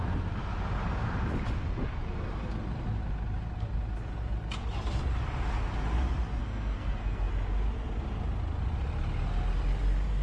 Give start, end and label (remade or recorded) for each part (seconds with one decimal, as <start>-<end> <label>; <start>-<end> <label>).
0.0-6.4 recorded; 6.4-7.3 remade; 7.3-10.2 recorded